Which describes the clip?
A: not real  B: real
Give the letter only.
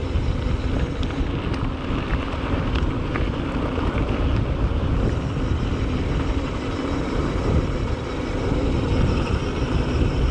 B